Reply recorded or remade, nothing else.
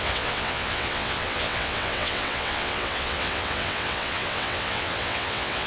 remade